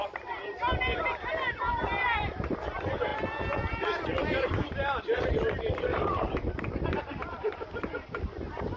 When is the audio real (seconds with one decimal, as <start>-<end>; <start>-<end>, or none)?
3.1-5.2